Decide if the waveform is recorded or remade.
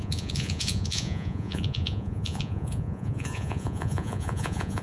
remade